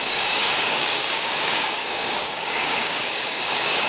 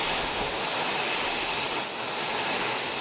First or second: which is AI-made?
first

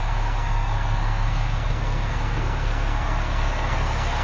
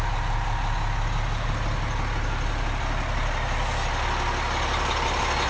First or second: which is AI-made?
first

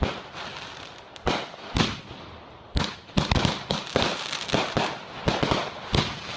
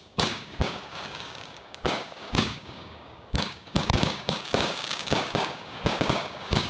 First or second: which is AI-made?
second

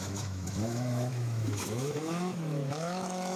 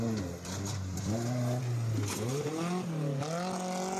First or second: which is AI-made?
first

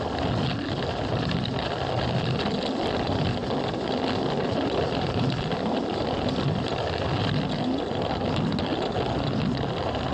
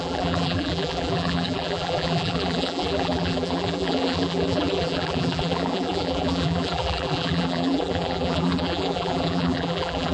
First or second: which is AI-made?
second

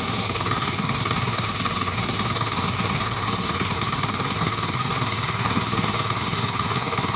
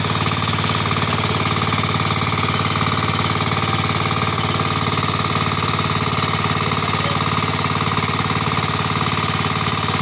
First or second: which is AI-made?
first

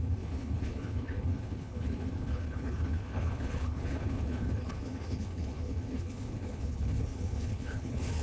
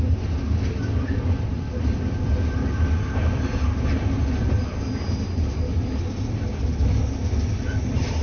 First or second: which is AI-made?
first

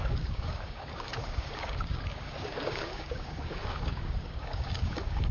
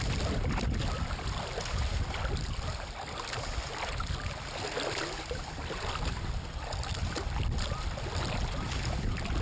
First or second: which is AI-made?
first